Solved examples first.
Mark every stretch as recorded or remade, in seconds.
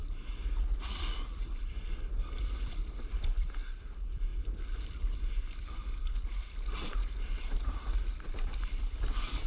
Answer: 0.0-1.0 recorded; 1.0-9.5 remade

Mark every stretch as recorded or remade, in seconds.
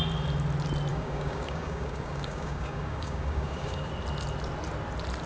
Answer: 0.0-0.9 recorded; 0.9-3.9 remade; 3.9-5.3 recorded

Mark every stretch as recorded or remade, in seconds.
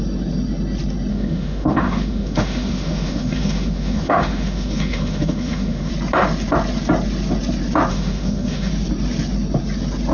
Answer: 0.0-1.1 recorded; 1.1-5.9 remade; 5.9-7.9 recorded; 7.9-8.7 remade; 8.7-10.1 recorded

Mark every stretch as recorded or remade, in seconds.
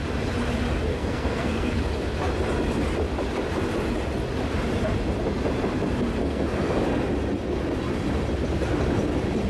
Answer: 0.0-0.9 recorded; 0.9-1.8 remade; 1.8-6.2 recorded; 6.2-6.8 remade; 6.8-9.5 recorded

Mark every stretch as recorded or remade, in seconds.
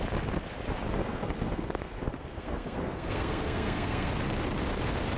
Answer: 0.0-1.0 recorded; 1.0-4.1 remade; 4.1-5.2 recorded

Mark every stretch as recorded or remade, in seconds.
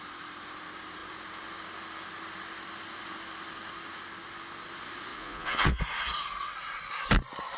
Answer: 0.0-5.1 recorded; 5.1-5.8 remade; 5.8-7.6 recorded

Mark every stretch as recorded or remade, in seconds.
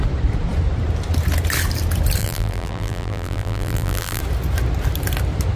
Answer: 0.0-2.2 recorded; 2.2-4.2 remade; 4.2-5.6 recorded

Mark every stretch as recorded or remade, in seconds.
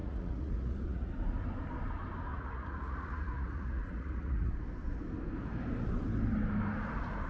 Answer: 0.0-1.1 remade; 1.1-2.3 recorded; 2.3-4.5 remade; 4.5-7.3 recorded